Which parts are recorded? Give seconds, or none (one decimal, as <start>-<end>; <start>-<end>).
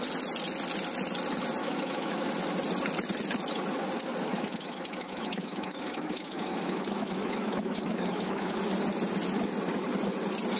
0.0-1.6; 2.3-4.3; 8.6-10.6